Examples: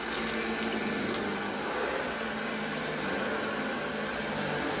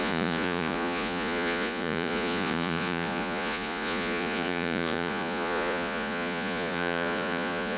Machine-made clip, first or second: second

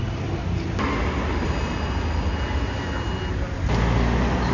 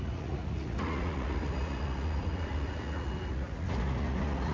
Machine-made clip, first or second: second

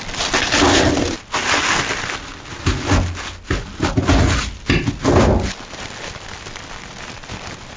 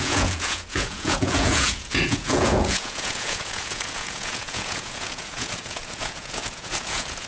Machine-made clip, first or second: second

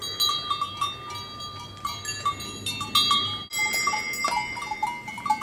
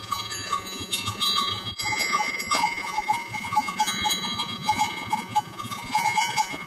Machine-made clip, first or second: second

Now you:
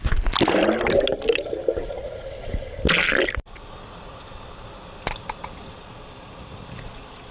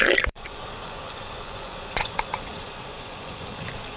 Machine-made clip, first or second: second